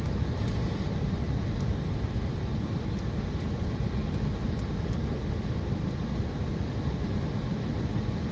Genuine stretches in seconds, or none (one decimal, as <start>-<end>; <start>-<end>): 0.0-8.3